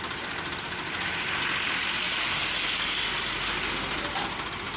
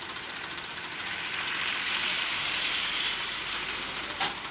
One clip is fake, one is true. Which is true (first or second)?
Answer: first